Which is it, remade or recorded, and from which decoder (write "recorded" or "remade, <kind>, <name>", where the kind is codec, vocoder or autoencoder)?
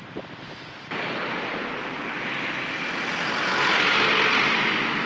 recorded